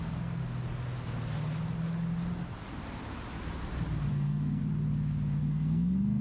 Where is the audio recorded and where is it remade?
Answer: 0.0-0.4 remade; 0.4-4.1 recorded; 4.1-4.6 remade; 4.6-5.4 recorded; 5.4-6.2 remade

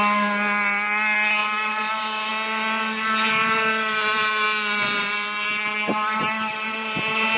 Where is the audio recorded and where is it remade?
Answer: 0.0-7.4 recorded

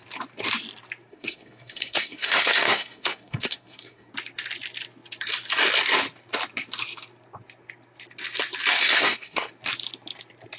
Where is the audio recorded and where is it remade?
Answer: 0.0-1.1 recorded; 1.1-4.1 remade; 4.1-8.8 recorded; 8.8-9.5 remade; 9.5-10.6 recorded

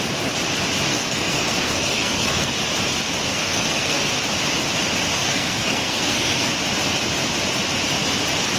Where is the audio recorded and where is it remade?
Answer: 0.0-0.9 recorded; 0.9-2.5 remade; 2.5-3.3 recorded; 3.3-4.1 remade; 4.1-5.2 recorded; 5.2-6.5 remade; 6.5-8.6 recorded

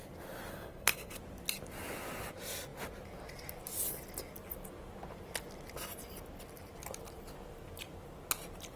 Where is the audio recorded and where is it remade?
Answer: 0.0-0.5 recorded; 0.5-1.2 remade; 1.2-8.8 recorded

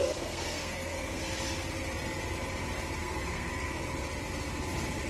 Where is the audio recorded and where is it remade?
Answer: 0.0-1.2 remade; 1.2-3.0 recorded; 3.0-3.5 remade; 3.5-5.1 recorded

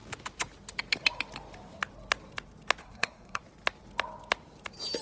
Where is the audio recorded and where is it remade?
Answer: 0.0-2.8 recorded; 2.8-3.4 remade; 3.4-5.0 recorded